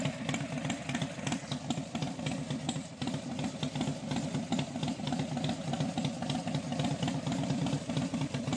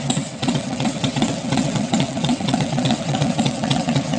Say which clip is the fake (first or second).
second